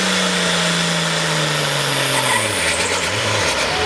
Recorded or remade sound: recorded